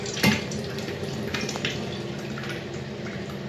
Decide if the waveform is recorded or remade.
recorded